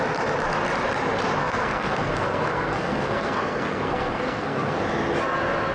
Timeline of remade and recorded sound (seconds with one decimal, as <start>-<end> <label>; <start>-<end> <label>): 0.0-1.4 recorded; 1.4-4.8 remade; 4.8-5.7 recorded